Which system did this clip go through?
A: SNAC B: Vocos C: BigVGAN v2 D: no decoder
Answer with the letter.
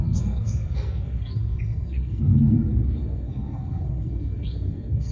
A